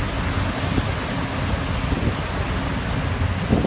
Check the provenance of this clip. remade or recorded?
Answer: recorded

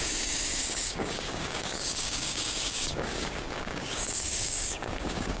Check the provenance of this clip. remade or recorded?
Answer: remade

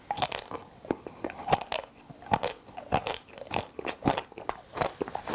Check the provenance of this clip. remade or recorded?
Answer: recorded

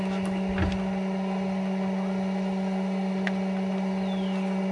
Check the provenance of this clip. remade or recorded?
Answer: recorded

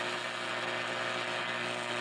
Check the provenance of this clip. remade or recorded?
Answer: recorded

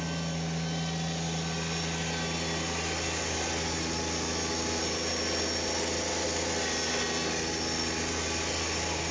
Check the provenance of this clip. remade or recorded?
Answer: recorded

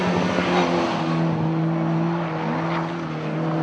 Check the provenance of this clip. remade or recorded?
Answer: recorded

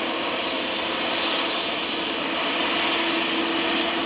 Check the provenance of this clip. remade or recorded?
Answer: recorded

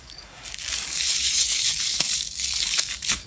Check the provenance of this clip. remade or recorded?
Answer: remade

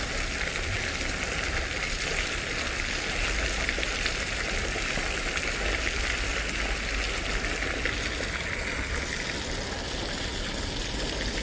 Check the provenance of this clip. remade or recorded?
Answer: recorded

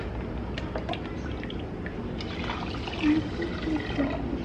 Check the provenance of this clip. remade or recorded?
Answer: recorded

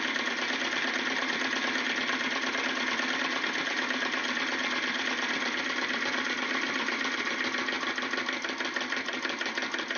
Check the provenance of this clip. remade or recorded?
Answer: recorded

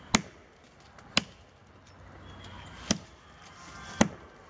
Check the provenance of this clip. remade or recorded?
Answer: recorded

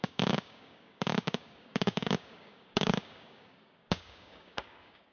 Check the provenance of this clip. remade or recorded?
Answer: remade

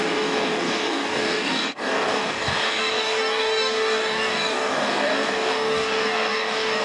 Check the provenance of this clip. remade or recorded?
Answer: remade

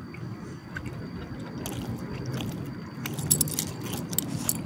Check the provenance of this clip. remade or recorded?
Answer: recorded